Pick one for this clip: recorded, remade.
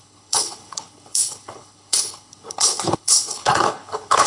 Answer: remade